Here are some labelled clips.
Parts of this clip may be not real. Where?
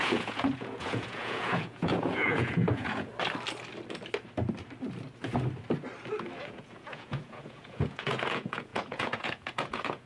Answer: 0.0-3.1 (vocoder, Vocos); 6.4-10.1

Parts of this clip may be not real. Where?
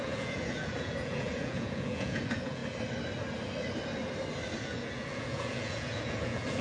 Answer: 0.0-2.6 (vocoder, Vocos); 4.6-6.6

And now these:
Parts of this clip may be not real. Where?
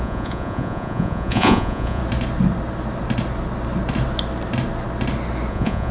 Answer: 0.0-2.0 (vocoder, Vocos); 5.5-5.9